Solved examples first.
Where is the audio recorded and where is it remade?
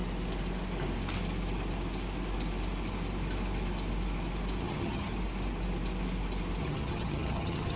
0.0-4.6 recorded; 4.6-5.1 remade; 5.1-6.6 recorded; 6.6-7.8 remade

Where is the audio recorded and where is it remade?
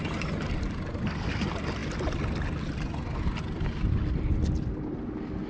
0.0-5.5 recorded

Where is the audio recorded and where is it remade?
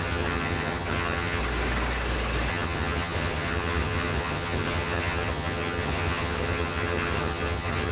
0.0-1.4 remade; 1.4-2.5 recorded; 2.5-7.9 remade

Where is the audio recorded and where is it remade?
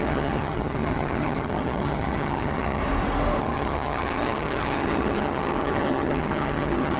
0.0-2.8 remade; 2.8-3.4 recorded; 3.4-7.0 remade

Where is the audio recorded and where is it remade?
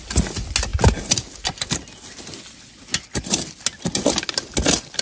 0.0-5.0 recorded